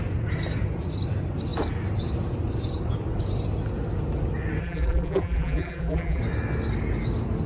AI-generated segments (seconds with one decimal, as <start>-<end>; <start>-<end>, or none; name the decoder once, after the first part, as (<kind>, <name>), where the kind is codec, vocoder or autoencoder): 4.6-6.2 (vocoder, BigVGAN v2)